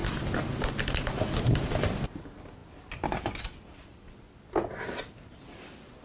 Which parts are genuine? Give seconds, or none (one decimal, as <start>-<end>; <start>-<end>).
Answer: 0.0-6.0